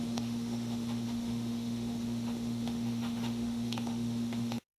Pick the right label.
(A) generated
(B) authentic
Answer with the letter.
A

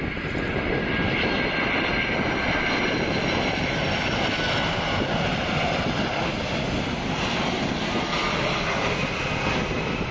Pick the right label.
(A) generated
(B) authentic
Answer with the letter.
B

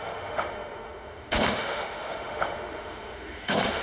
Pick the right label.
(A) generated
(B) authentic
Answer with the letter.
A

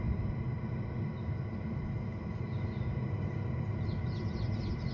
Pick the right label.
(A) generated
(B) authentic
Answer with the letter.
B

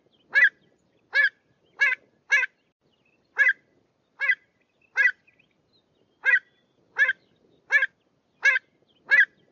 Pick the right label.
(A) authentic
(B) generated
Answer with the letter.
A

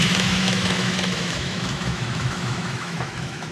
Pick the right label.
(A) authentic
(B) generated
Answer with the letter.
B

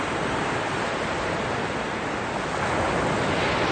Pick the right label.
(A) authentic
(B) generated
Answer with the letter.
A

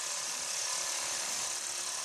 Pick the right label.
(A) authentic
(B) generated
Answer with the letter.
A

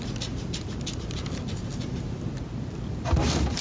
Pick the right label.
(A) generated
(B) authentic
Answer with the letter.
B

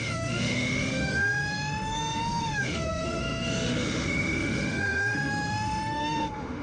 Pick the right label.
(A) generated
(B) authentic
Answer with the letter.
A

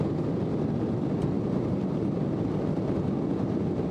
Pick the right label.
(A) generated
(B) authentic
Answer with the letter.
B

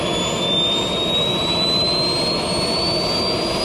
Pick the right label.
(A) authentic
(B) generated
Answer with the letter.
A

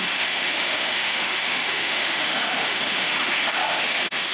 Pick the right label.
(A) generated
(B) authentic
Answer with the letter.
A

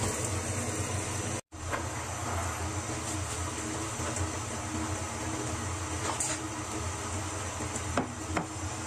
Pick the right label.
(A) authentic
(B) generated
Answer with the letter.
A